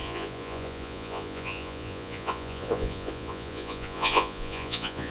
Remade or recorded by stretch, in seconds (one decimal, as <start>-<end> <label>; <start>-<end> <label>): 0.0-5.1 remade